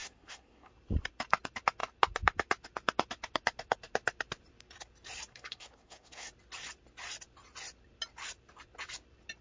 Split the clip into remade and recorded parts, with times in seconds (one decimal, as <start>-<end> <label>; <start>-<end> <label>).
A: 0.0-0.7 remade; 0.7-5.3 recorded; 5.3-6.3 remade; 6.3-9.4 recorded